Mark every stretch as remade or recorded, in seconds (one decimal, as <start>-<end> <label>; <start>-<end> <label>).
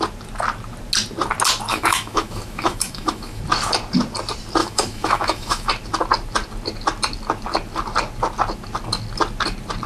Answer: 0.0-1.7 recorded; 1.7-3.4 remade; 3.4-4.6 recorded; 4.6-5.7 remade; 5.7-9.9 recorded